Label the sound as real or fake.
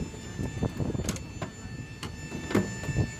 real